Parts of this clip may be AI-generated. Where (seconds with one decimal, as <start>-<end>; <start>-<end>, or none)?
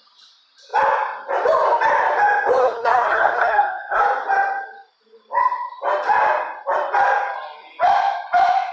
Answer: 2.6-4.0